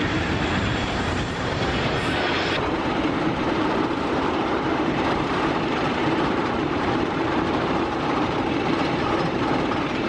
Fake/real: fake